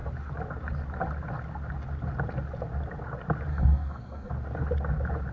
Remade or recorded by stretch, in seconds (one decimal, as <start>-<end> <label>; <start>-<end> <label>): 0.0-3.5 recorded; 3.5-4.3 remade; 4.3-5.3 recorded